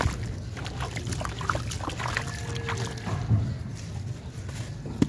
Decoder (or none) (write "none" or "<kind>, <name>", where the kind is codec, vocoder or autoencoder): none